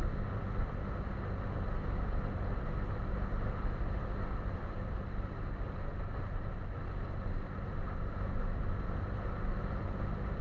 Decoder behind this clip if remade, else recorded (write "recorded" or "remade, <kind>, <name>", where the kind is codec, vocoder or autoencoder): recorded